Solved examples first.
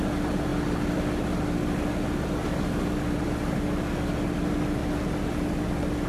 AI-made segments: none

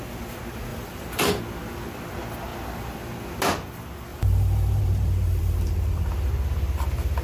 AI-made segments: 0.7-1.4 (vocoder, BigVGAN v2); 4.1-6.3

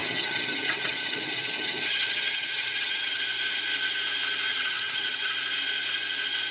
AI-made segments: 0.0-3.2 (vocoder, HiFi-GAN); 4.5-5.3